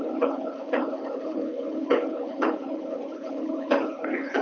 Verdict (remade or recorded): remade